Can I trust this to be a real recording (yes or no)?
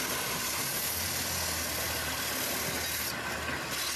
yes